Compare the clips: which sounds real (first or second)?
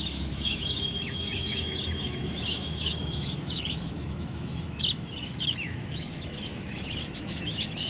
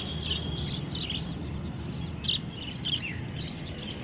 second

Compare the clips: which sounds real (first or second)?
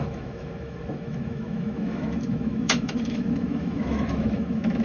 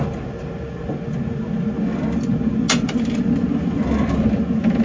second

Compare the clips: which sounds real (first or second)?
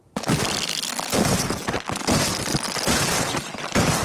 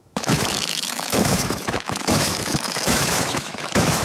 first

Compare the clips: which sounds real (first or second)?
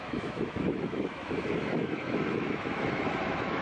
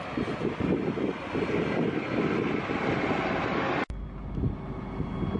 second